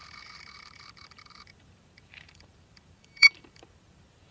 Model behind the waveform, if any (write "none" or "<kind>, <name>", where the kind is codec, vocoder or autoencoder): vocoder, BigVGAN v2